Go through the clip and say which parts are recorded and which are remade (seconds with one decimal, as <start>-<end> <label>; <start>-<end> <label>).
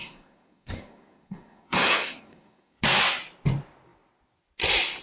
0.0-2.8 remade; 2.8-5.0 recorded